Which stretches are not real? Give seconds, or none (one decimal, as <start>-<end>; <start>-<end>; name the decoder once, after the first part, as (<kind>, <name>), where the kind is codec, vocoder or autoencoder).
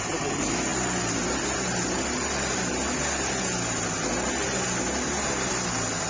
none